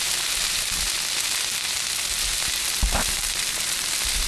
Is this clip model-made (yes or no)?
no